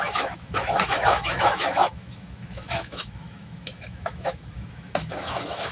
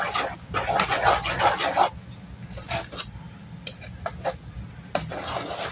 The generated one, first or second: first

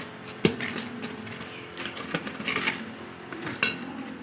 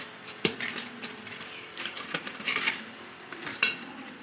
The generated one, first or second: second